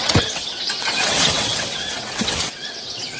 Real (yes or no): no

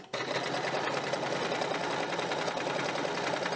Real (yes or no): yes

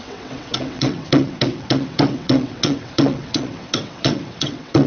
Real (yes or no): no